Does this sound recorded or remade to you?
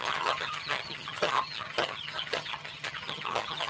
remade